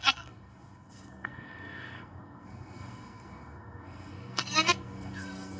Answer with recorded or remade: remade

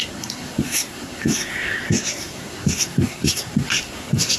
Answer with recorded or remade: remade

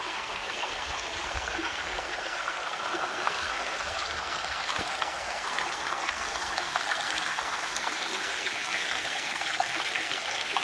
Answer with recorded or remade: remade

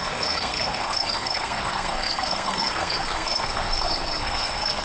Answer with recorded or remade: remade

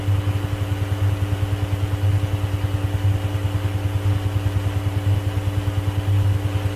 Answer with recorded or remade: recorded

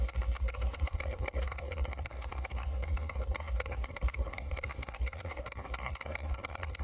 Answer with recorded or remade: remade